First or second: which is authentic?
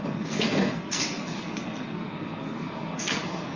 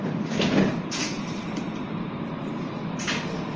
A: second